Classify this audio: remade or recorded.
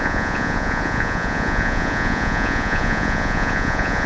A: remade